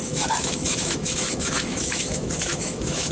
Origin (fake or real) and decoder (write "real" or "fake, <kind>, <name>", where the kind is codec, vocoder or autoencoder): fake, autoencoder, DAC-VAE